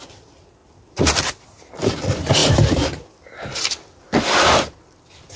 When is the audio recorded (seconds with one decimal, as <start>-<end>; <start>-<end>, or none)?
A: 0.0-5.4